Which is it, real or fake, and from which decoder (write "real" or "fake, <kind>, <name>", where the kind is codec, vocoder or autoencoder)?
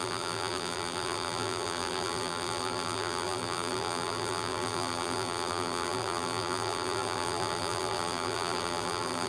fake, vocoder, BigVGAN v2